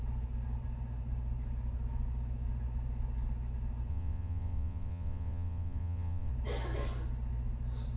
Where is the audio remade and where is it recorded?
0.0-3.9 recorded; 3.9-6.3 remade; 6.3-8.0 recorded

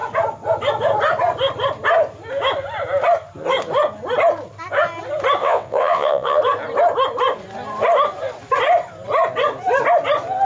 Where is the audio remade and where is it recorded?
0.0-5.4 recorded; 5.4-6.4 remade; 6.4-10.4 recorded

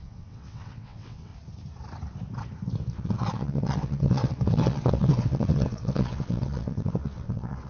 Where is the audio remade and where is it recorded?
0.0-1.3 remade; 1.3-2.9 recorded; 2.9-7.7 remade

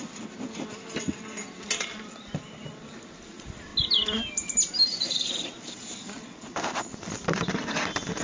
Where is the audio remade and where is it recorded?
0.0-8.2 recorded

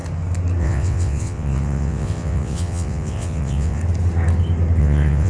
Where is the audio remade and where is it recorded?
0.0-0.6 recorded; 0.6-3.8 remade; 3.8-4.8 recorded; 4.8-5.3 remade

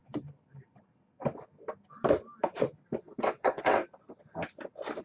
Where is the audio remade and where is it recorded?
0.0-3.0 recorded; 3.0-3.8 remade; 3.8-5.0 recorded

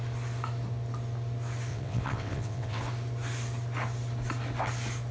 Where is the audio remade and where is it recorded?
0.0-1.7 recorded; 1.7-2.8 remade; 2.8-5.1 recorded